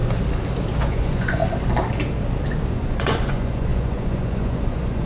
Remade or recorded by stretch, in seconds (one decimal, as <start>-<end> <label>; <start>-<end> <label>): 0.0-0.9 recorded; 0.9-1.4 remade; 1.4-2.7 recorded; 2.7-5.1 remade